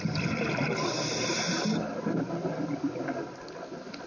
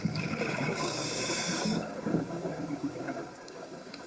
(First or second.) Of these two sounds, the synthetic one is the second